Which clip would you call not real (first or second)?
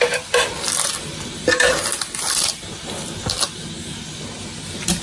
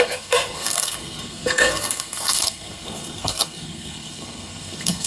second